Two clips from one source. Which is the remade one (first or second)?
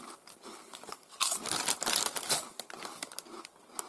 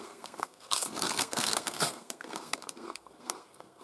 second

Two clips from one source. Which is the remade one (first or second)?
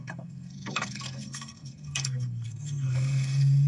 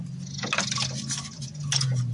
first